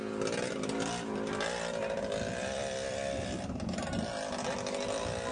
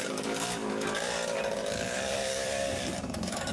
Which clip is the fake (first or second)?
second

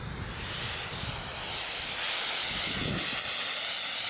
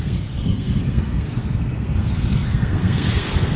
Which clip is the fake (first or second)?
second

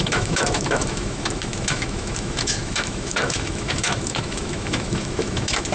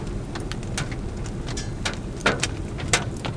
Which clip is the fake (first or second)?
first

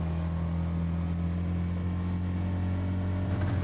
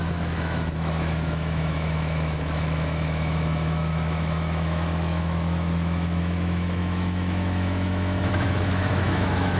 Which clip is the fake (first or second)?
second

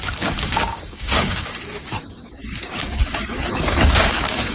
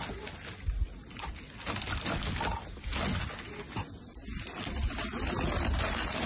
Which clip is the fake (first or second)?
first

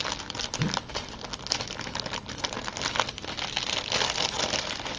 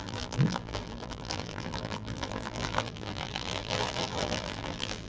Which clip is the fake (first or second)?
second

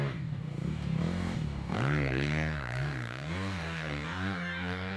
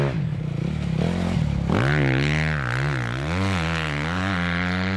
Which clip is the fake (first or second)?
first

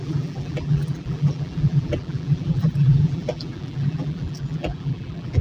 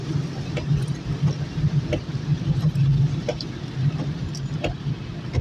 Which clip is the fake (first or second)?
first